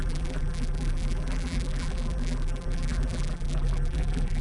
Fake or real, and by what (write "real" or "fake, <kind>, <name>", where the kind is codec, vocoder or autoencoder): fake, vocoder, BigVGAN v2